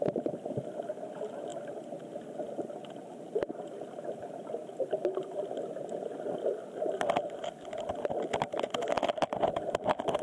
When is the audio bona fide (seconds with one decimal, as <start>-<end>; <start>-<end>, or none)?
0.0-10.2